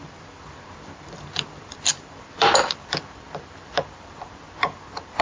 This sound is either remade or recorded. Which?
remade